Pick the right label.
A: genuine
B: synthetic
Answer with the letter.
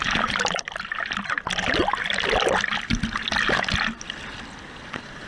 A